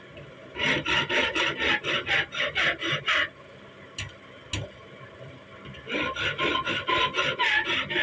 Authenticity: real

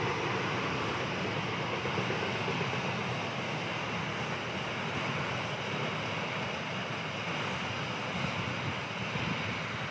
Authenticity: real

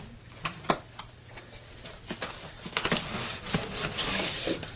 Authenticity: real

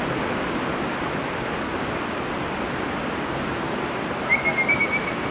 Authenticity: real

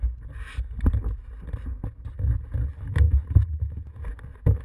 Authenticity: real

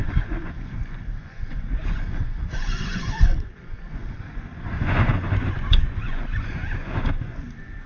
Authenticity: fake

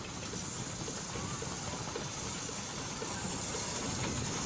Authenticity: real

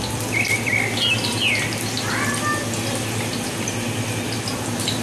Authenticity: real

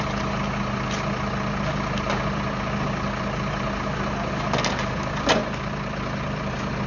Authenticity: real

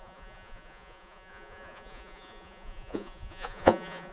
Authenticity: fake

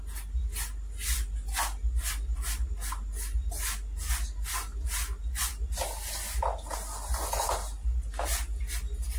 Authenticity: real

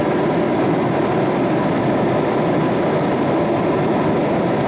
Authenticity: real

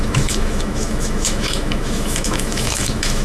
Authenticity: fake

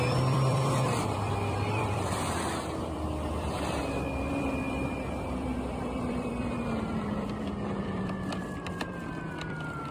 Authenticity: fake